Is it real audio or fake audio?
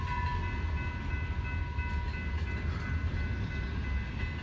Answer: real